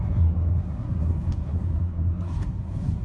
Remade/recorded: remade